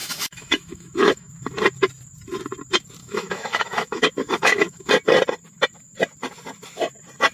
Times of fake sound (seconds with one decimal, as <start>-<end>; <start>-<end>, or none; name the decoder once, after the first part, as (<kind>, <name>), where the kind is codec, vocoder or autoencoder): 0.0-1.3 (autoencoder, DAC-VAE); 3.0-4.9